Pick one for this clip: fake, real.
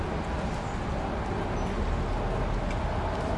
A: real